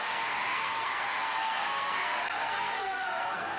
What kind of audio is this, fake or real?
fake